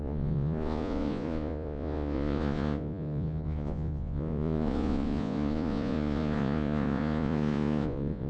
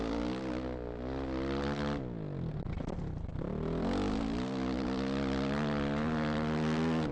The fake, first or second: first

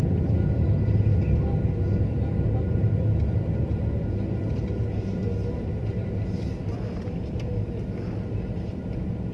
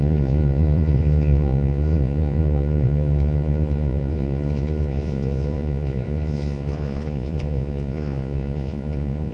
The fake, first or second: second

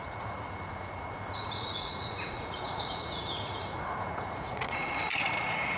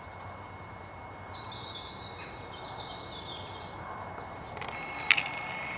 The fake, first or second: first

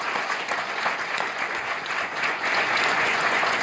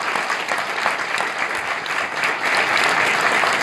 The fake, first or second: first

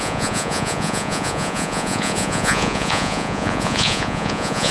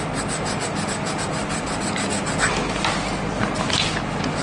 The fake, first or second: first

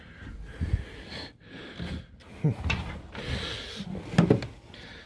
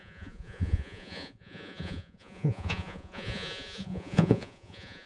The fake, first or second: second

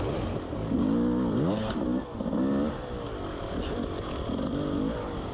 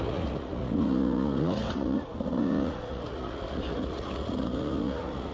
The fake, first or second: second